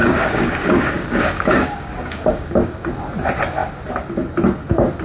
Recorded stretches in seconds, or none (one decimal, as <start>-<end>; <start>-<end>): 2.9-5.0